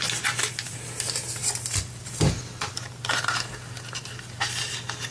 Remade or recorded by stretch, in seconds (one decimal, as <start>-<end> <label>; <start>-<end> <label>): 0.0-1.4 recorded; 1.4-4.5 remade; 4.5-5.1 recorded